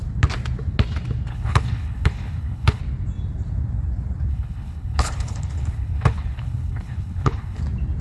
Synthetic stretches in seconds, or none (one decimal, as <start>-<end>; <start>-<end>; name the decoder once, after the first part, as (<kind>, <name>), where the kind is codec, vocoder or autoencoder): 1.3-2.8 (codec, HILCodec); 4.3-7.6